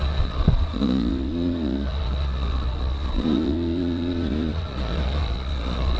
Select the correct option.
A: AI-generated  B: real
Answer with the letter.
A